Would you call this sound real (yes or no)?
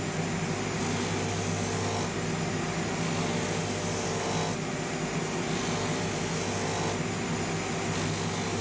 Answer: yes